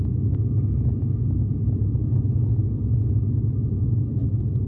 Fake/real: real